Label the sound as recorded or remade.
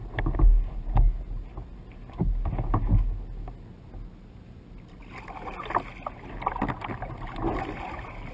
recorded